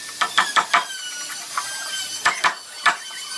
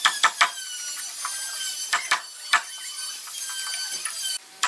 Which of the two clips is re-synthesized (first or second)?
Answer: first